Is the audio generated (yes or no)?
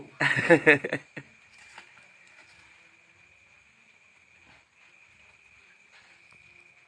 no